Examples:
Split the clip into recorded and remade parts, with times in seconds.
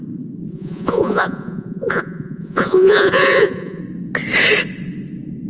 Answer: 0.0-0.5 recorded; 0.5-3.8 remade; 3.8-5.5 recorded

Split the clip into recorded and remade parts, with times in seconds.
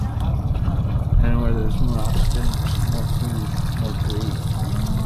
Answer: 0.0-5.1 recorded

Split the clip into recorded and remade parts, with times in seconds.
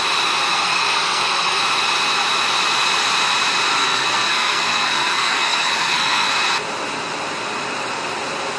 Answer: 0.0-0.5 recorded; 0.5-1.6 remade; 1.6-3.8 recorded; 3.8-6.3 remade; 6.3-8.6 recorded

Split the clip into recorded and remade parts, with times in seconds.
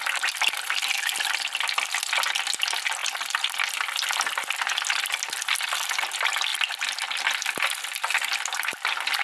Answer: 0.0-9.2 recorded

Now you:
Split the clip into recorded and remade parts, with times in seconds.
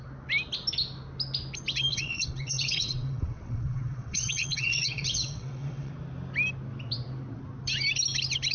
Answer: 0.0-1.9 recorded; 1.9-5.9 remade; 5.9-8.5 recorded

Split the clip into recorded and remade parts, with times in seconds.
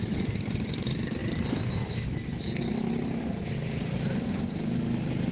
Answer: 0.0-5.3 recorded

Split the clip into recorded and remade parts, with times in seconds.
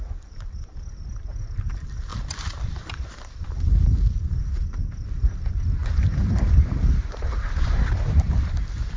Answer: 0.0-2.1 recorded; 2.1-4.8 remade; 4.8-5.8 recorded; 5.8-8.6 remade; 8.6-9.0 recorded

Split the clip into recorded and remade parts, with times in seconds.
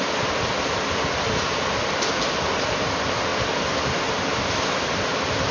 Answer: 0.0-5.5 recorded